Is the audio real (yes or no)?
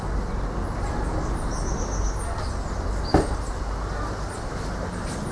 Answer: yes